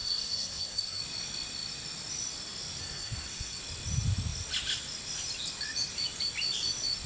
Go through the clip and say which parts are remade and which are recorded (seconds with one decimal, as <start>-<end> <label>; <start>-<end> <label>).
0.0-1.0 remade; 1.0-2.8 recorded; 2.8-3.6 remade; 3.6-7.1 recorded